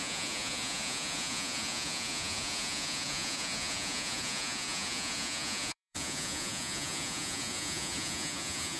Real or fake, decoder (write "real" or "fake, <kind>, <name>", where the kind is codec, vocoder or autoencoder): fake, vocoder, Vocos